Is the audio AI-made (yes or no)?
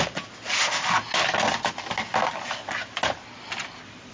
no